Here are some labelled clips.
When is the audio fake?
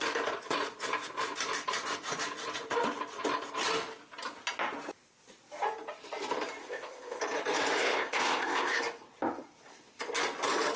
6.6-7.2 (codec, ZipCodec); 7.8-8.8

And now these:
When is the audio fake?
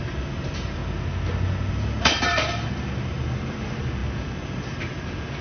0.0-0.8 (vocoder, BigVGAN v2); 1.7-5.4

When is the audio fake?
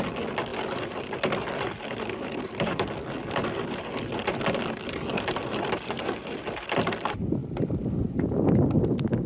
5.1-6.4 (vocoder, BigVGAN v2)